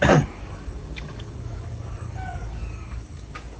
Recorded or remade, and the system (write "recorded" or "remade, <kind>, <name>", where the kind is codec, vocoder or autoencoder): remade, codec, DAC